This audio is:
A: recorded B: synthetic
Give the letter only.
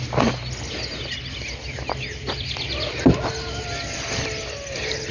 A